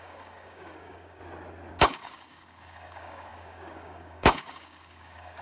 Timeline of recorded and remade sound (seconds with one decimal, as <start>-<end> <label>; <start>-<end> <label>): 0.0-1.2 remade; 1.2-1.8 recorded; 1.8-5.4 remade